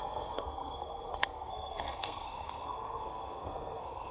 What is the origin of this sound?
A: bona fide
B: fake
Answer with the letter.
B